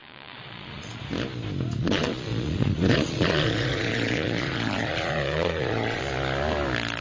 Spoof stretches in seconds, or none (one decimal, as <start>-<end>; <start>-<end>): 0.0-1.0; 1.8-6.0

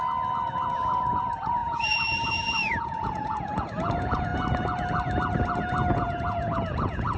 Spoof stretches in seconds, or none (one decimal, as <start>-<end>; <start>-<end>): 0.0-4.3; 5.9-7.2

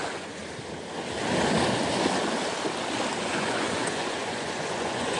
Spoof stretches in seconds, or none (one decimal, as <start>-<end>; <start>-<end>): 0.0-0.4; 3.2-5.2

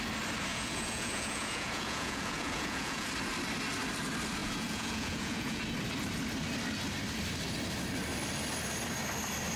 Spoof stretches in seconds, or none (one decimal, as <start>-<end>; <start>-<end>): 0.5-3.1; 4.4-5.6

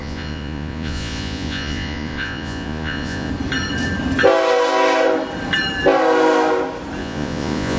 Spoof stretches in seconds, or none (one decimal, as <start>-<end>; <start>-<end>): 0.0-3.3; 7.0-7.8